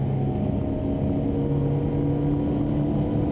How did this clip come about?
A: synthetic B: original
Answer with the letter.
B